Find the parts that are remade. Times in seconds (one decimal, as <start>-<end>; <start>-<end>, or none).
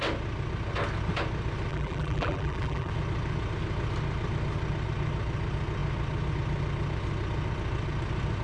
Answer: 1.7-2.9